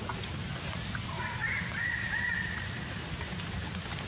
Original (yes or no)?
yes